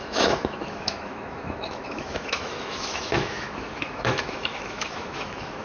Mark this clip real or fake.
fake